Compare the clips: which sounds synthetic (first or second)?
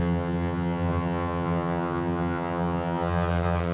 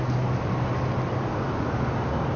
first